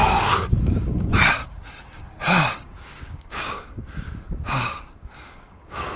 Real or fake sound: fake